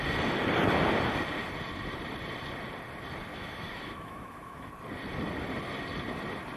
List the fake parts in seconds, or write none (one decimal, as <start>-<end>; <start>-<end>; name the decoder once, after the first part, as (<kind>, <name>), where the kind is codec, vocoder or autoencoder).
3.3-4.7 (autoencoder, DAC-VAE)